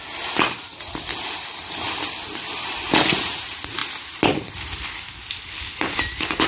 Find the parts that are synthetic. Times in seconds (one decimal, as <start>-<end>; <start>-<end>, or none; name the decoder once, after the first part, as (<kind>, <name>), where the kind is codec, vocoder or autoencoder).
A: none